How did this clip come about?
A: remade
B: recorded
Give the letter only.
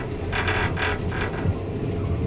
B